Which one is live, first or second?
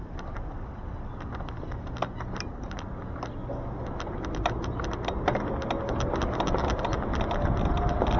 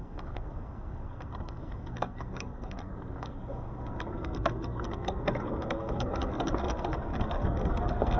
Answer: first